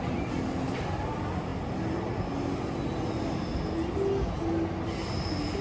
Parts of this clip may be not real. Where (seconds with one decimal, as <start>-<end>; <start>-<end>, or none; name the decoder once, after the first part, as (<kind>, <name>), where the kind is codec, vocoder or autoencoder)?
none

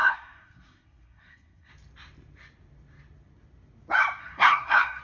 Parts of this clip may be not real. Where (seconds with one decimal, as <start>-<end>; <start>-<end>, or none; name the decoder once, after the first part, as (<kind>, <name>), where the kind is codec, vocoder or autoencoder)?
0.0-1.7 (codec, SNAC); 4.2-5.0

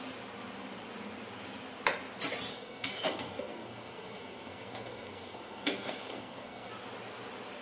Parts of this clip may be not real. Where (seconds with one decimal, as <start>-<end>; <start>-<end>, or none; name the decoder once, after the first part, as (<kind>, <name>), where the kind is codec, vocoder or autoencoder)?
2.5-6.7 (codec, SNAC)